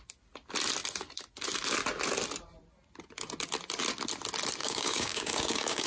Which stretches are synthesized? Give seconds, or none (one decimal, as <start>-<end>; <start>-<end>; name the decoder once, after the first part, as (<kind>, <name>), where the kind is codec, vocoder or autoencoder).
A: 4.6-5.9 (codec, DAC)